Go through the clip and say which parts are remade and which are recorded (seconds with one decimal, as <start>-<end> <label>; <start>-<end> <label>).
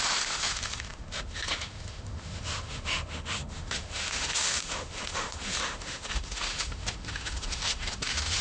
0.0-8.4 remade